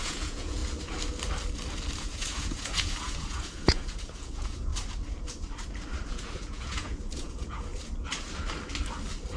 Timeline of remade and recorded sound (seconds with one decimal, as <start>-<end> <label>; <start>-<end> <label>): 0.0-0.6 remade; 0.6-2.0 recorded; 2.0-4.7 remade; 4.7-6.1 recorded; 6.1-7.7 remade; 7.7-9.4 recorded

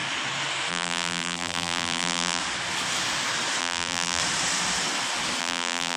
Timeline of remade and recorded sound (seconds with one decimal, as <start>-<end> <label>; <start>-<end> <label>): 0.0-0.7 recorded; 0.7-2.4 remade; 2.4-3.6 recorded; 3.6-4.2 remade; 4.2-5.4 recorded; 5.4-6.0 remade

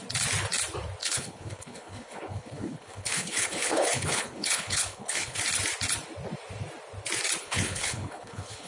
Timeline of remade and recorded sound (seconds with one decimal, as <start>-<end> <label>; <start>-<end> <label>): 0.0-1.0 recorded; 1.0-5.4 remade; 5.4-7.4 recorded; 7.4-8.7 remade

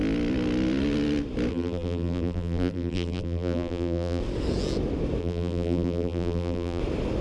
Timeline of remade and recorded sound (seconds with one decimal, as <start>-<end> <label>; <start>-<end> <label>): 0.0-1.5 recorded; 1.5-4.2 remade; 4.2-5.2 recorded; 5.2-6.8 remade; 6.8-7.2 recorded

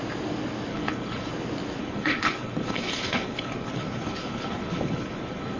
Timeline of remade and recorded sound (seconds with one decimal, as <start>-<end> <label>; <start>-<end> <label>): 0.0-0.7 recorded; 0.7-1.3 remade; 1.3-1.8 recorded; 1.8-5.6 remade

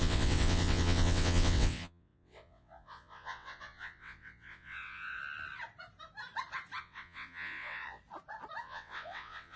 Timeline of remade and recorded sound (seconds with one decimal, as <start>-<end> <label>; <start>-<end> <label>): 0.0-5.2 remade; 5.2-6.8 recorded; 6.8-8.0 remade; 8.0-8.6 recorded; 8.6-9.6 remade